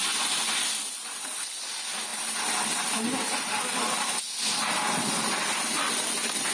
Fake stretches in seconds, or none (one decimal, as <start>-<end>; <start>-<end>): none